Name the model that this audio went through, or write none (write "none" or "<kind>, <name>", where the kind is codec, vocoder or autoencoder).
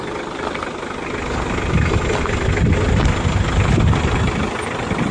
none